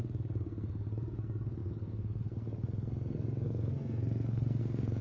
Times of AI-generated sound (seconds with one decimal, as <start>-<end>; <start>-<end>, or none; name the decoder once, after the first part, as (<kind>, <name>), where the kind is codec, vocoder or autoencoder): 0.0-5.0 (codec, SNAC)